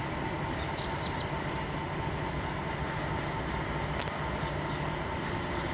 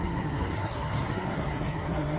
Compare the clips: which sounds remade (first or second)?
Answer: second